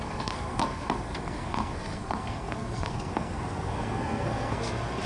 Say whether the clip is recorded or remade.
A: remade